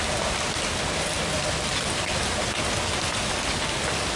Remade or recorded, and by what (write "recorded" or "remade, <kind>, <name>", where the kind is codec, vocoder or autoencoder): recorded